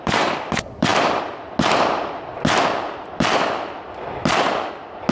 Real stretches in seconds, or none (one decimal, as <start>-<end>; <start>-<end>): 0.9-2.6; 4.2-5.1